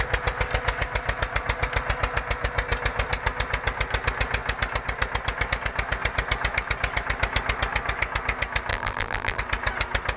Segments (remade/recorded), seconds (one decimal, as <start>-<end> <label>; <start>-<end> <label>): 0.0-8.7 recorded; 8.7-9.4 remade; 9.4-10.2 recorded